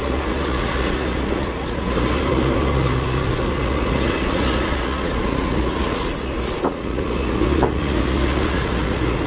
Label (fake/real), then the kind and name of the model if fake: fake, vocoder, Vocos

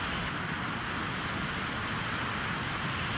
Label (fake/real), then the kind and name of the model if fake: real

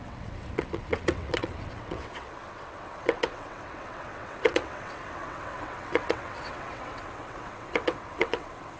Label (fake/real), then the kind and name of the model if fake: fake, vocoder, WaveNeXt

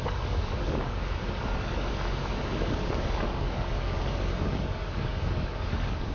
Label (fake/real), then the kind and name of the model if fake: fake, codec, DAC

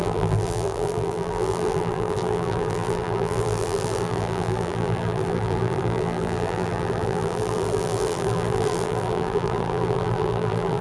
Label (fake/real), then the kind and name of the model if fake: fake, vocoder, BigVGAN v2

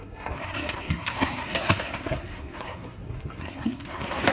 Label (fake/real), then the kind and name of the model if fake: fake, codec, SNAC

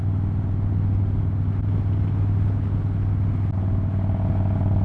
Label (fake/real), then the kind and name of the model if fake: real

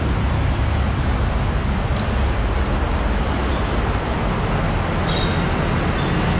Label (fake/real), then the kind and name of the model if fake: real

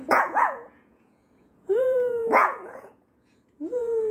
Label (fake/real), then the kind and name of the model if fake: fake, vocoder, Vocos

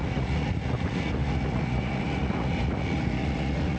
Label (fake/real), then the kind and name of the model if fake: fake, vocoder, Vocos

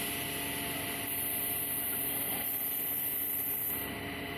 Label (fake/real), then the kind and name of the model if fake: real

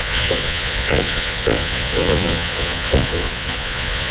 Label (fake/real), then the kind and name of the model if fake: fake, vocoder, Vocos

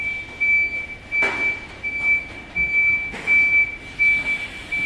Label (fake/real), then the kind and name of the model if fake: real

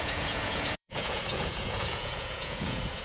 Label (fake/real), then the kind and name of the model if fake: fake, vocoder, Vocos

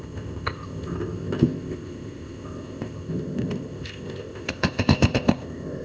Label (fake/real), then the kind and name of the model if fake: fake, codec, ZipCodec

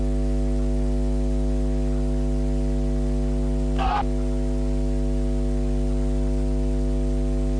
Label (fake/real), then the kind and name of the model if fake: real